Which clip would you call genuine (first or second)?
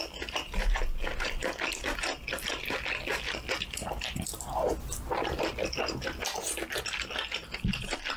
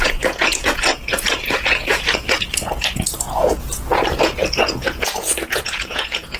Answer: first